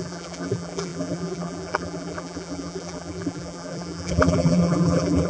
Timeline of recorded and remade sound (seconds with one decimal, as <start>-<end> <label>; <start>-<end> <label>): 0.0-5.3 remade